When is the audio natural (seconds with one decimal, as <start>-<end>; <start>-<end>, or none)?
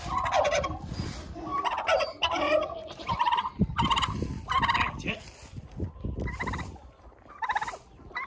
0.0-8.3